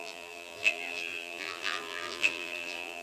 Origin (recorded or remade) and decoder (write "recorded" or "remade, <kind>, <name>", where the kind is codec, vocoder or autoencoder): remade, vocoder, BigVGAN v2